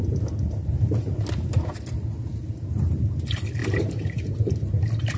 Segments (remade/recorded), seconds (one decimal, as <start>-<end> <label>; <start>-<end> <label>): 0.0-3.6 recorded; 3.6-4.8 remade; 4.8-5.2 recorded